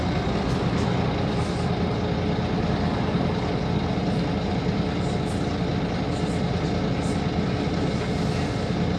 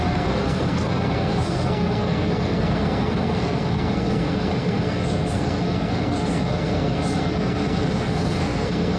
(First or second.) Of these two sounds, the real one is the first